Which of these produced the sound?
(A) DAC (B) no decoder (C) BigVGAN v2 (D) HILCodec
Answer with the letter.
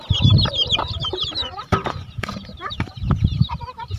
C